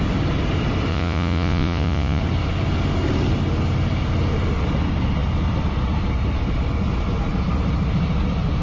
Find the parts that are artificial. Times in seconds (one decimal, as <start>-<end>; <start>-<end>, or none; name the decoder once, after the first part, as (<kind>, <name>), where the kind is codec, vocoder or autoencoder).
0.9-2.2 (vocoder, Vocos)